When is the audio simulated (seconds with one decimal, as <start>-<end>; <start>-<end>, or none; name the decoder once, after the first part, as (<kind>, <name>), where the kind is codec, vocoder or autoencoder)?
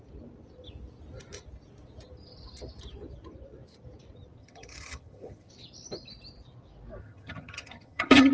4.4-5.5 (vocoder, HiFi-GAN); 7.0-8.3